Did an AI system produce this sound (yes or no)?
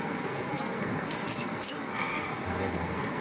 yes